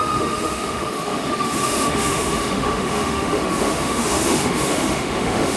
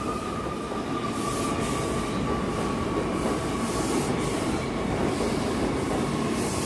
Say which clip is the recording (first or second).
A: second